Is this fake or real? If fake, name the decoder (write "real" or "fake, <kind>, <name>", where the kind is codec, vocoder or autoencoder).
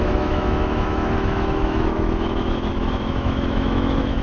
fake, autoencoder, DAC-VAE